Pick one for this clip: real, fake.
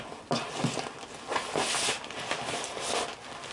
real